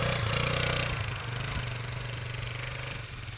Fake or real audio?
real